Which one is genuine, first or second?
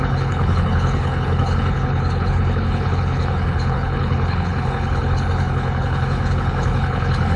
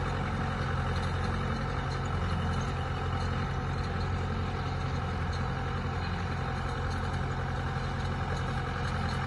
second